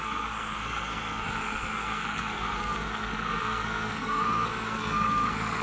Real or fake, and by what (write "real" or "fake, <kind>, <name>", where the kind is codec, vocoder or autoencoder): fake, codec, SNAC